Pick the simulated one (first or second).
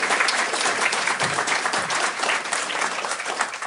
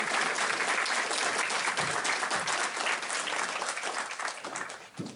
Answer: first